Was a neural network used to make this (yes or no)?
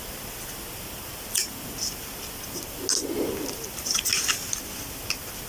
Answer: no